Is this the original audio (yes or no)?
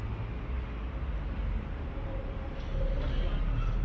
yes